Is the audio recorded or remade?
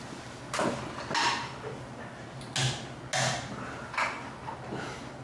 recorded